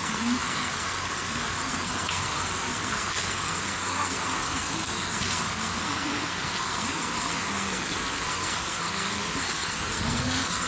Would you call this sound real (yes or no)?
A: no